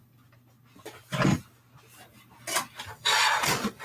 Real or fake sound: real